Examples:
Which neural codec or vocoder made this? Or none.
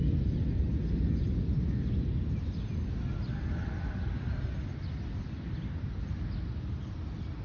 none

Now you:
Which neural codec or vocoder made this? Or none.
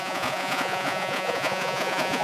vocoder, Vocos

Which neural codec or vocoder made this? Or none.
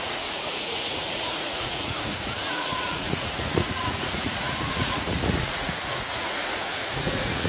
vocoder, Vocos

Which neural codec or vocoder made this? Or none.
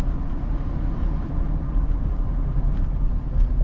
none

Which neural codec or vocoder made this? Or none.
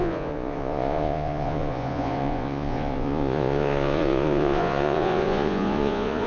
vocoder, Vocos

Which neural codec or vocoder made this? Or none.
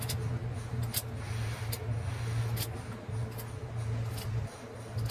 none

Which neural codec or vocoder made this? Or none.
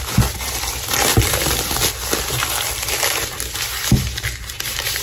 none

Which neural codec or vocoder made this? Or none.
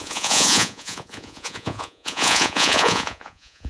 vocoder, Vocos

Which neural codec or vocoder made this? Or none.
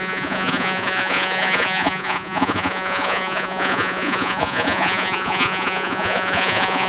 vocoder, Vocos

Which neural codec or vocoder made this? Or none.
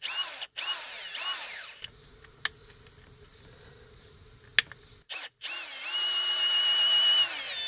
none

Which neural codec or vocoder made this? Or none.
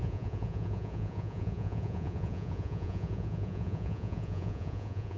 vocoder, Vocos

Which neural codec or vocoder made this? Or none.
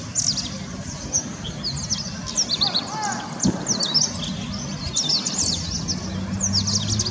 none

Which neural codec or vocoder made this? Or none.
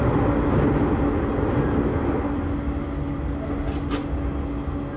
none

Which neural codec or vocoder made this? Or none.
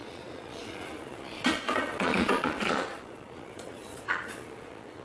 vocoder, Vocos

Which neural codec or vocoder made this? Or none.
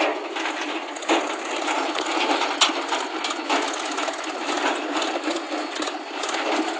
none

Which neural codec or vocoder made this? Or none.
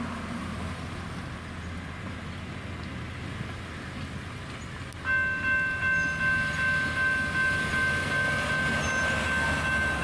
none